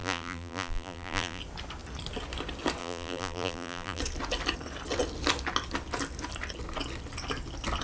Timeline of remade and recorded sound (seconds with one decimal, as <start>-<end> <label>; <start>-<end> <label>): 0.0-1.4 remade; 1.4-2.8 recorded; 2.8-4.0 remade; 4.0-7.8 recorded